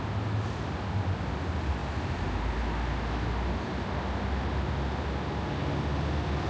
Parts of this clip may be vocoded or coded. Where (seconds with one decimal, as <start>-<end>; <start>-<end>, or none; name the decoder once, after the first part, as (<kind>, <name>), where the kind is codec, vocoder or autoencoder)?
none